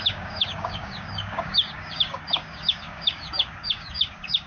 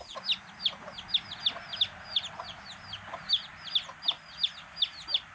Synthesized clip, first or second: first